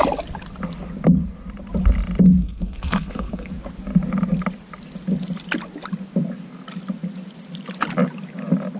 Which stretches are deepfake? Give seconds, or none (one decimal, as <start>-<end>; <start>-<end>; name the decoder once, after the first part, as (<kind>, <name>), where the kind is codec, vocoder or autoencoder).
2.4-3.5 (codec, SNAC)